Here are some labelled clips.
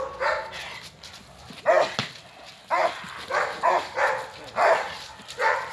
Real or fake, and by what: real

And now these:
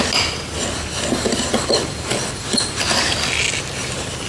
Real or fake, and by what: real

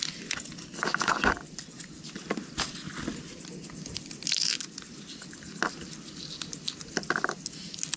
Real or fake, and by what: real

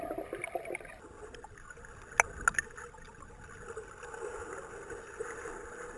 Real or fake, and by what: real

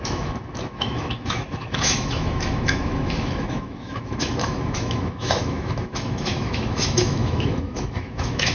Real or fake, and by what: fake, autoencoder, DAC-VAE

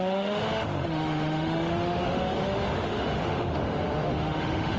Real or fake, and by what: fake, autoencoder, DAC-VAE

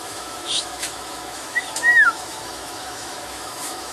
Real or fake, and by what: fake, autoencoder, DAC-VAE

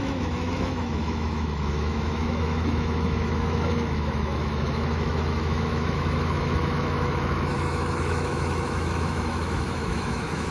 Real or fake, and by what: fake, autoencoder, DAC-VAE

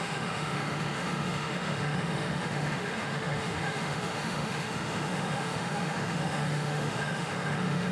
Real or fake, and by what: fake, autoencoder, DAC-VAE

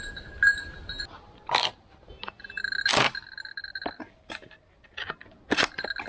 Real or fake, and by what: real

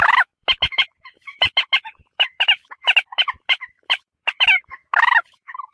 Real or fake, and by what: fake, autoencoder, DAC-VAE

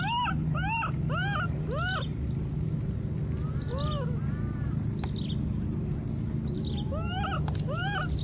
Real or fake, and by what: real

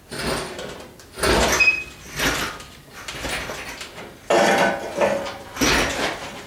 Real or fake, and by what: real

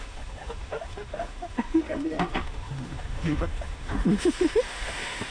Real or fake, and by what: fake, autoencoder, DAC-VAE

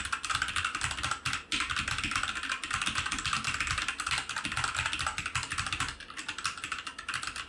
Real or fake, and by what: real